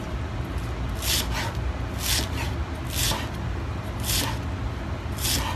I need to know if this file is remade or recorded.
recorded